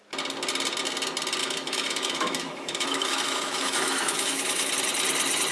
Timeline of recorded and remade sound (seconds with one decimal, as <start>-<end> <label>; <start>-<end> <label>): 0.0-1.4 recorded; 1.4-4.7 remade; 4.7-5.5 recorded